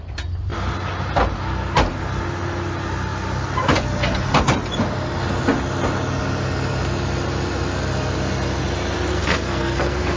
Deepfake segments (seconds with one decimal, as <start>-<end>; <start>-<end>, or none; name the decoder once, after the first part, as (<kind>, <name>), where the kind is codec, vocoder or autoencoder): 9.1-10.2 (codec, SNAC)

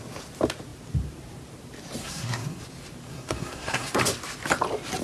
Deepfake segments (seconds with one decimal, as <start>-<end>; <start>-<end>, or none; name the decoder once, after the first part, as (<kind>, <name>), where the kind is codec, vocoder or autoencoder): 2.0-2.6 (codec, SNAC); 3.1-4.0